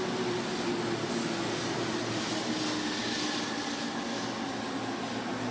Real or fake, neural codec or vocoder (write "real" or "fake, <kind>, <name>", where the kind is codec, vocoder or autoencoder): real